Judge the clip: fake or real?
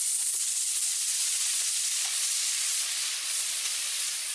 fake